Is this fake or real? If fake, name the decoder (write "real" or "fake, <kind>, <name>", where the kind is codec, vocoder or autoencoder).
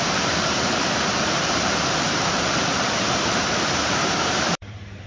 fake, vocoder, BigVGAN v2